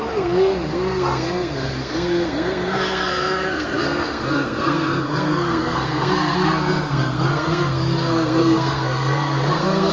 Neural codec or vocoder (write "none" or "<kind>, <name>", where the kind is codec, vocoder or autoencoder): codec, SNAC